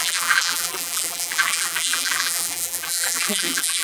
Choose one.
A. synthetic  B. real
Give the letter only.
A